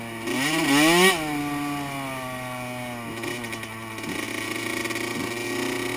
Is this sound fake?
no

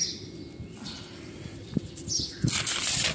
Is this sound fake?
no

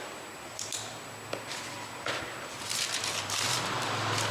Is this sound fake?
yes